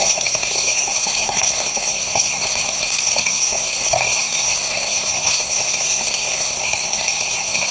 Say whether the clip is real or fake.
fake